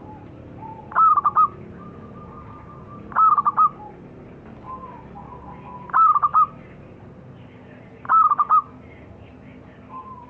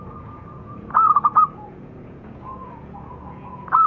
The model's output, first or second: second